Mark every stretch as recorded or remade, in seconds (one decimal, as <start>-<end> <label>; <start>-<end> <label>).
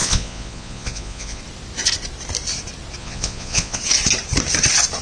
0.0-1.4 remade; 1.4-3.0 recorded; 3.0-3.8 remade; 3.8-5.0 recorded